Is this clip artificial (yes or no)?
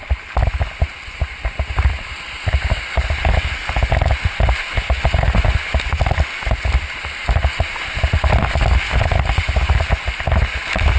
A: no